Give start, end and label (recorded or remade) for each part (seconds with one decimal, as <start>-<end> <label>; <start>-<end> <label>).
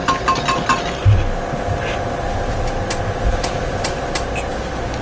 0.0-5.0 recorded